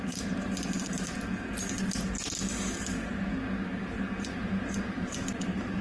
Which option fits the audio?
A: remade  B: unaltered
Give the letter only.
B